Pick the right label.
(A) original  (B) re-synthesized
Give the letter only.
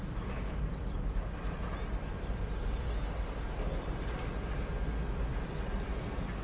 A